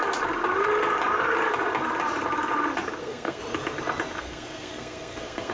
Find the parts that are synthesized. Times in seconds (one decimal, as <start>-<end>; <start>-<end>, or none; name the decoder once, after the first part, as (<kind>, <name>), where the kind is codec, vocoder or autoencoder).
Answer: 3.0-3.4 (codec, SNAC); 4.2-5.5